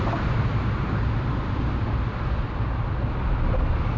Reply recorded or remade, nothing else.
recorded